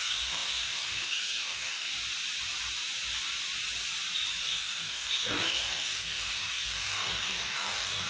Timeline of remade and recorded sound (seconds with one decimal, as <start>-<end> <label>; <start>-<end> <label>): 0.0-1.9 remade; 1.9-4.4 recorded; 4.4-8.1 remade